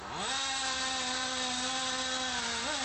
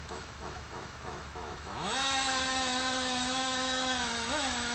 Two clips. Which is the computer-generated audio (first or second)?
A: second